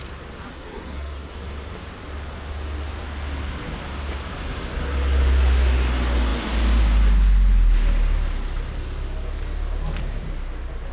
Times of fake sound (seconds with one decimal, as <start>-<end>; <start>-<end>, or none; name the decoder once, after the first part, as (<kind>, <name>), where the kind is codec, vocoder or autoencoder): 0.5-1.3 (codec, SNAC)

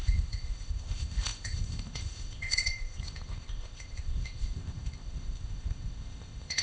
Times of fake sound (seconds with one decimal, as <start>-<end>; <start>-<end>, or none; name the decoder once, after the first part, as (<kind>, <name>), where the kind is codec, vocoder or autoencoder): 0.0-6.6 (codec, ZipCodec)

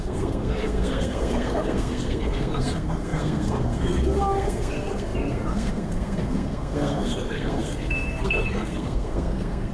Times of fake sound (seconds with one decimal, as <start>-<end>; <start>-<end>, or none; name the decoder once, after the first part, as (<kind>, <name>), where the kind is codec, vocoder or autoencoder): 0.0-9.7 (codec, SNAC)

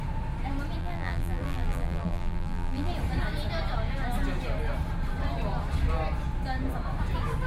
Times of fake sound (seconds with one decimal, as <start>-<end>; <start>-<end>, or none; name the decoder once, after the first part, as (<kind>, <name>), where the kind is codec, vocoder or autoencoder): 0.8-2.9 (vocoder, BigVGAN v2)

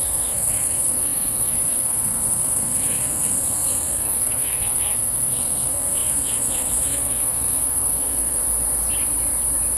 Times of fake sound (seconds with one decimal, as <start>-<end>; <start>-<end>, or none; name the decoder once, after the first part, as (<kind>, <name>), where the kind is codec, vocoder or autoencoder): 0.0-8.4 (codec, SNAC)

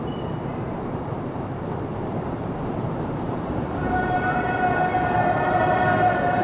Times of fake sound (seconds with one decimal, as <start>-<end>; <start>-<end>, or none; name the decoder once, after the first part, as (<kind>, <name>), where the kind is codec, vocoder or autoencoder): 0.5-3.5 (vocoder, BigVGAN v2)

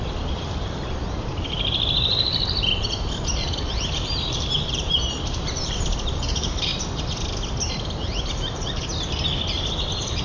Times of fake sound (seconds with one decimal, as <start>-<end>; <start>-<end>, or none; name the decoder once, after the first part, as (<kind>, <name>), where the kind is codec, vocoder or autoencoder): 0.0-6.7 (vocoder, BigVGAN v2); 7.7-8.9; 9.7-10.2